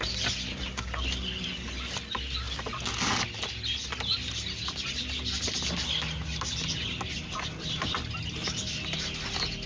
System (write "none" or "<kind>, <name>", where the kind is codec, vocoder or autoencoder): none